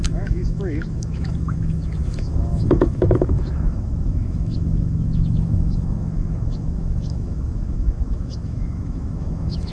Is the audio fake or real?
fake